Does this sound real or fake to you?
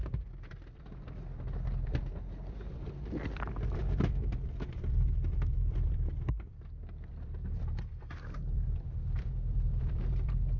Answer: fake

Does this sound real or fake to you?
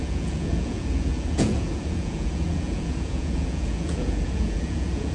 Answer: fake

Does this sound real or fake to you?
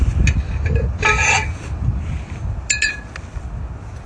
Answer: real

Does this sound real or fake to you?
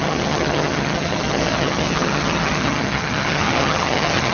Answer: fake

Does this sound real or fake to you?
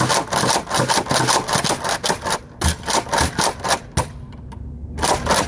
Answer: real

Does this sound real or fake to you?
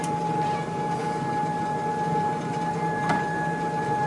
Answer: real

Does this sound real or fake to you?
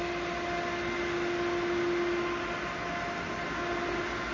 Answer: real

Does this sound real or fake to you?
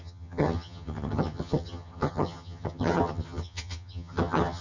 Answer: fake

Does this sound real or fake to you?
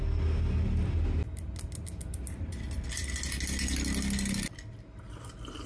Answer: real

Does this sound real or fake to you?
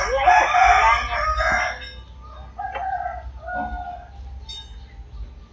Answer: real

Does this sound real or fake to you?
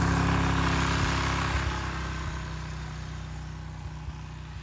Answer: real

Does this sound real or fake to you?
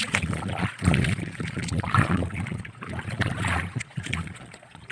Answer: fake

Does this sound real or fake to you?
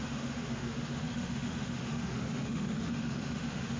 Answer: fake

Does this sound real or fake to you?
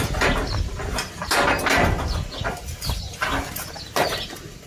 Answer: real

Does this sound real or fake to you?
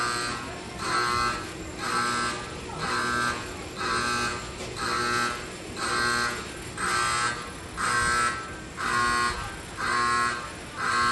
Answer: real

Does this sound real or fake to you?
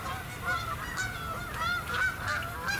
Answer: real